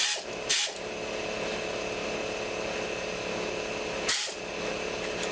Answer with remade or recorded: recorded